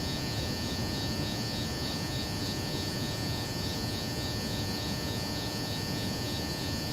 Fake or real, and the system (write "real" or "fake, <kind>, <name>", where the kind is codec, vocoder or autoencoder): fake, vocoder, Vocos